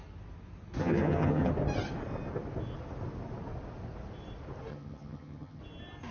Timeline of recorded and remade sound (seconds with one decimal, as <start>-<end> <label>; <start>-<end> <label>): 0.0-0.8 recorded; 0.8-1.5 remade; 1.5-4.7 recorded; 4.7-5.6 remade; 5.6-6.1 recorded